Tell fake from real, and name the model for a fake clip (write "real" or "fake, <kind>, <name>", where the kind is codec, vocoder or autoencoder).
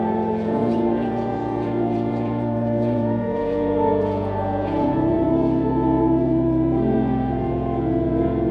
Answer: fake, vocoder, Vocos